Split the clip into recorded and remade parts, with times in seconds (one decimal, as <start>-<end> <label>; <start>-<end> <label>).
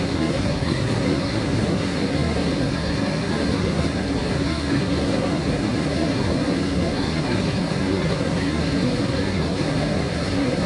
0.0-10.7 remade